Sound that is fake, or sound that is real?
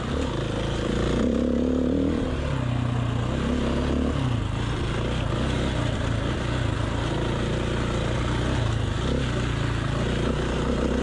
real